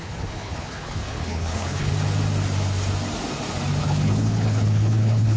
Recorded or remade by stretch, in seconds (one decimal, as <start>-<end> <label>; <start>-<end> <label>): 0.0-1.9 remade; 1.9-3.8 recorded; 3.8-5.4 remade